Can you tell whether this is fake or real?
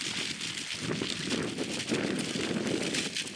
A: real